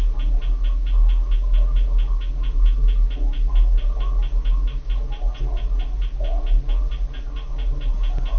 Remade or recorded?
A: recorded